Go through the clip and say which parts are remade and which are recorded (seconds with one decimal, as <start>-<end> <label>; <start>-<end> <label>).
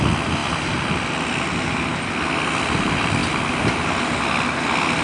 0.0-5.0 recorded